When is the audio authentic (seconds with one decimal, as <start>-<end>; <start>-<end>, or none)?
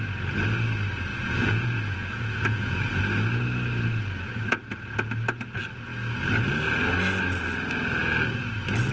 0.0-1.1; 3.0-8.9